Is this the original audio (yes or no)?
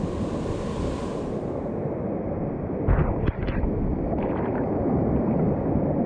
yes